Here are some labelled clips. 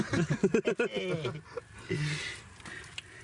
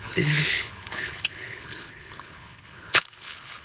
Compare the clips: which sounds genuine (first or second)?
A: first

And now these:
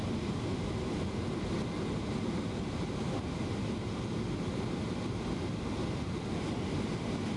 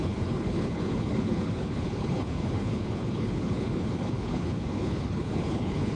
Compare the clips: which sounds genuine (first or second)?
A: first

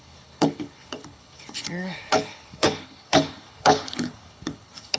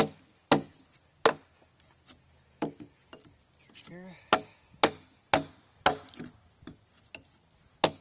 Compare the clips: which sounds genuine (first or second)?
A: second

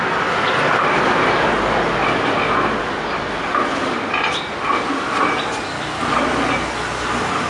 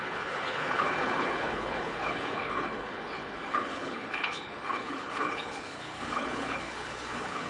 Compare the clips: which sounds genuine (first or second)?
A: first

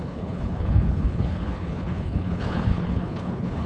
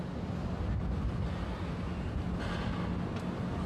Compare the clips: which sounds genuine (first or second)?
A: second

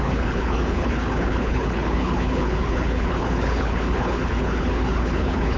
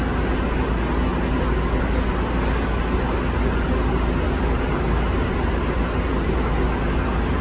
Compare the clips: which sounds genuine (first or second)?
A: second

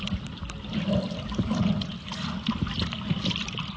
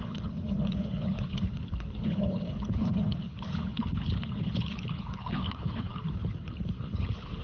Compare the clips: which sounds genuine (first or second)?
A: first